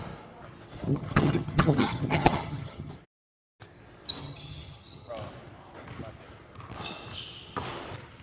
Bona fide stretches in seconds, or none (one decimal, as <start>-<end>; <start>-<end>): 0.0-0.9; 2.9-4.2; 5.1-8.2

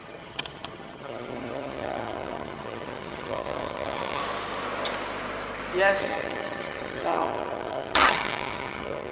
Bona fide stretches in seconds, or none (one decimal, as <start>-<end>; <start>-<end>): 4.2-6.0